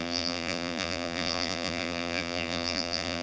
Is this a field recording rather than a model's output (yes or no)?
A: no